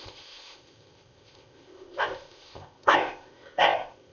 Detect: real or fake fake